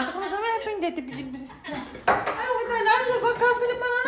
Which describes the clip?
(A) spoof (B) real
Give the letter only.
B